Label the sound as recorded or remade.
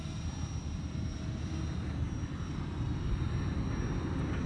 recorded